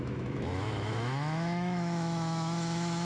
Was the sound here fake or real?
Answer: fake